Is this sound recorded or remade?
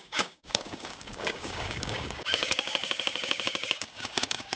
remade